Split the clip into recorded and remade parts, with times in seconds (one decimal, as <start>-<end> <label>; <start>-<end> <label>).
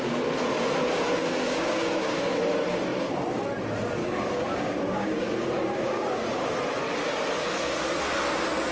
0.0-1.2 recorded; 1.2-2.4 remade; 2.4-4.0 recorded; 4.0-6.5 remade; 6.5-8.7 recorded